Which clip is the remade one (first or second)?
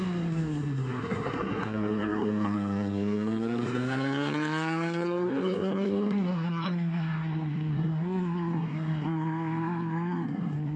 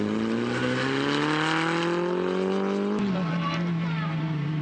first